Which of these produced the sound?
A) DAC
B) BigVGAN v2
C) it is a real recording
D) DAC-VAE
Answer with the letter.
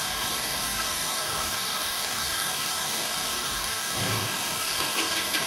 A